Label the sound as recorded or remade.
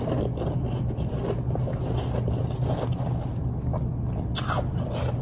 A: recorded